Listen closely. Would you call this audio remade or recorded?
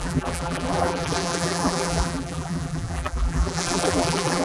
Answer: remade